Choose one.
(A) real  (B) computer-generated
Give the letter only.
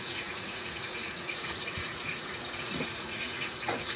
B